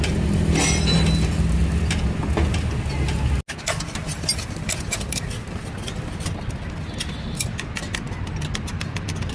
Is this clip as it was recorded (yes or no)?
yes